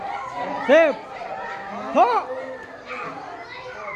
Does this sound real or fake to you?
real